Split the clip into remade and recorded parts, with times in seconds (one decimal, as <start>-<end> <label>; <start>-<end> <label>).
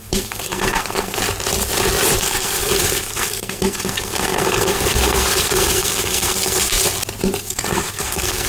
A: 0.0-1.2 remade; 1.2-2.2 recorded; 2.2-6.7 remade; 6.7-7.4 recorded; 7.4-8.5 remade